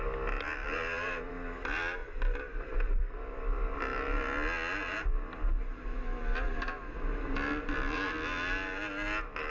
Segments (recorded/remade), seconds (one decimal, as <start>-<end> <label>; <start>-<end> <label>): 0.0-0.6 recorded; 0.6-1.3 remade; 1.3-2.0 recorded; 2.0-3.0 remade; 3.0-9.5 recorded

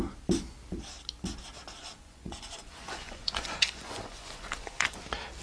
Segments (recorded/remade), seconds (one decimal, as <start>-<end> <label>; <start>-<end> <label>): 0.0-1.8 recorded; 1.8-5.0 remade; 5.0-5.4 recorded

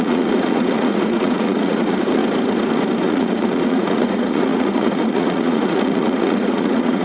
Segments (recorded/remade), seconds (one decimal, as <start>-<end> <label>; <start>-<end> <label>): 0.0-2.2 remade; 2.2-3.0 recorded; 3.0-7.0 remade

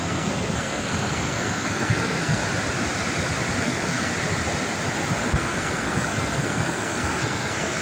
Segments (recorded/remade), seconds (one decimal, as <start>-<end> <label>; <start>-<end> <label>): 0.0-2.4 remade; 2.4-3.6 recorded; 3.6-4.1 remade; 4.1-5.3 recorded; 5.3-7.8 remade

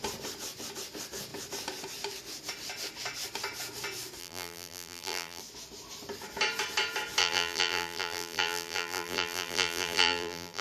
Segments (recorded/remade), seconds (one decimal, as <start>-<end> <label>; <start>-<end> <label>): 0.0-4.2 recorded; 4.2-5.4 remade; 5.4-7.2 recorded; 7.2-10.6 remade